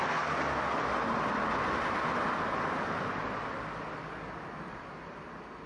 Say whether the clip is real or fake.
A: real